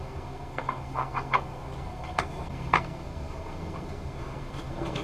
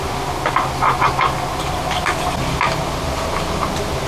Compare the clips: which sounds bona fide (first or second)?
second